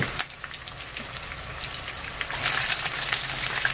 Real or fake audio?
real